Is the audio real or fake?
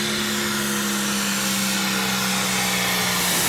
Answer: real